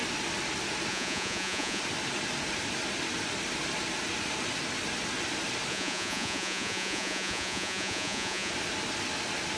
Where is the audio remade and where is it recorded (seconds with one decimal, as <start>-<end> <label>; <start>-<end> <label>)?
0.0-0.9 recorded; 0.9-1.8 remade; 1.8-5.7 recorded; 5.7-8.5 remade; 8.5-9.6 recorded